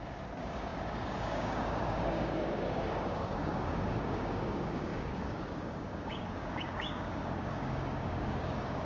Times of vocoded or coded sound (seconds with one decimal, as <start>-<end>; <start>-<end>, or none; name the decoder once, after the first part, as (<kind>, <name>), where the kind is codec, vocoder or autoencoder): 0.0-8.8 (codec, DAC)